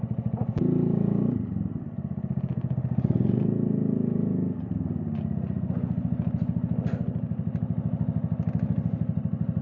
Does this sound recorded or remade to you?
recorded